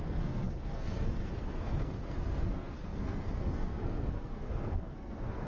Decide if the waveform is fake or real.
fake